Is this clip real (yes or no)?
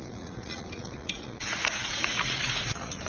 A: no